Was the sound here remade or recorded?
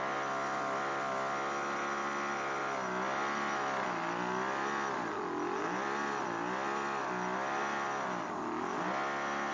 recorded